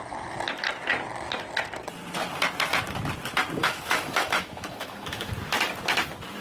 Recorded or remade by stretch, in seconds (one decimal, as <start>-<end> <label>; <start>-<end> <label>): 0.0-3.6 recorded; 3.6-5.3 remade; 5.3-6.4 recorded